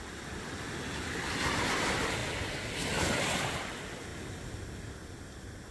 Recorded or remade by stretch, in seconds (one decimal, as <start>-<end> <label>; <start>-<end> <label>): 0.0-5.7 recorded

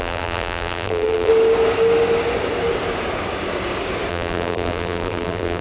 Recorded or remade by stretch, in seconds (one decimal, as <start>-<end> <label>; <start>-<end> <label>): 0.0-1.3 remade; 1.3-4.1 recorded; 4.1-5.6 remade